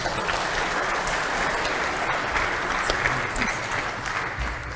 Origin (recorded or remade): recorded